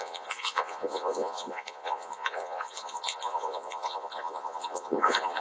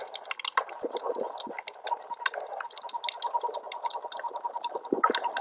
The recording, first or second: second